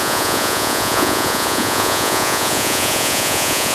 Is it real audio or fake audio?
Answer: fake